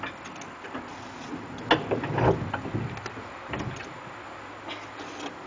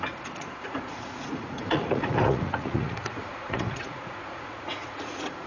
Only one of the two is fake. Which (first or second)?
second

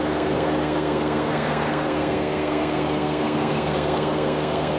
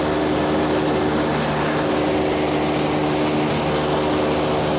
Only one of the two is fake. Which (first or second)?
first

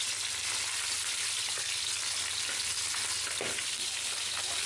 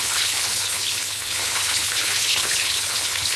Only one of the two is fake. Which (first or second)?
second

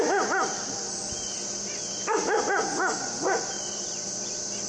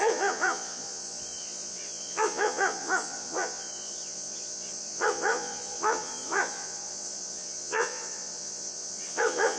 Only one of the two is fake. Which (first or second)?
second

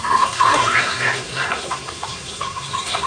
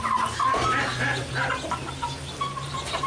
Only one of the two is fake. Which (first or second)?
first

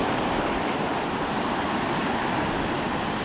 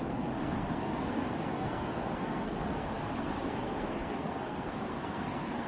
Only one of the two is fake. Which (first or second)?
second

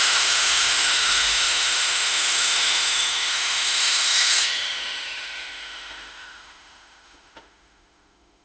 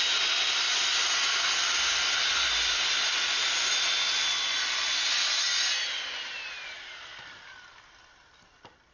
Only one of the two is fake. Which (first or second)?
first